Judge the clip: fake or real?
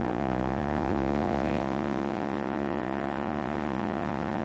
fake